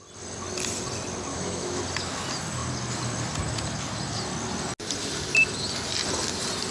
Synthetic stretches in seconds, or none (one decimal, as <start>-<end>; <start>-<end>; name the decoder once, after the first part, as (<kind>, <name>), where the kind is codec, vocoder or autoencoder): 1.3-1.8 (autoencoder, DAC-VAE)